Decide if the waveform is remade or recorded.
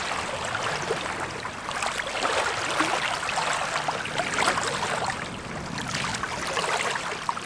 recorded